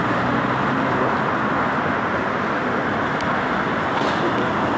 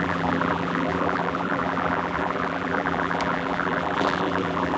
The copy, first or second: second